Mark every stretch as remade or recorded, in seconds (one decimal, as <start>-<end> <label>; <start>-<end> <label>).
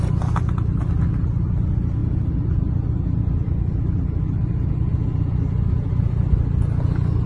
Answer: 0.0-7.3 recorded